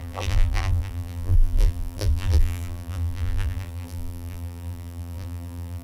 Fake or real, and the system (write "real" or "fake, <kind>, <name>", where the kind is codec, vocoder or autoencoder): fake, vocoder, BigVGAN v2